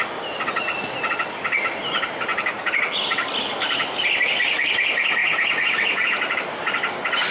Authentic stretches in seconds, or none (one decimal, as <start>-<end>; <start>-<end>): 0.0-2.3; 2.9-5.2; 6.6-7.3